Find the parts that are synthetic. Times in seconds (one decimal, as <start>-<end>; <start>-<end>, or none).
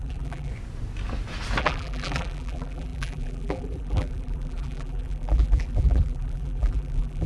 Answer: 0.0-0.5; 1.6-7.3